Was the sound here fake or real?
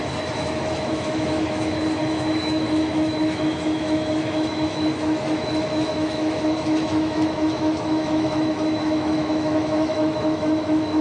fake